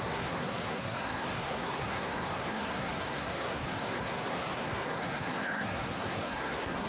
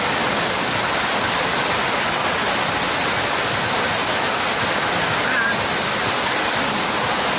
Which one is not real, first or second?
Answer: first